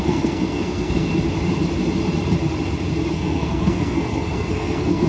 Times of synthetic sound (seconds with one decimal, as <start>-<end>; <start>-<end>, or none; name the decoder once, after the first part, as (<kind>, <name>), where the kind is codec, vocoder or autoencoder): 0.0-1.1 (codec, SNAC); 3.1-5.1